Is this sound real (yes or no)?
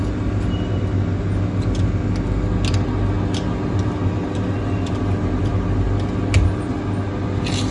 yes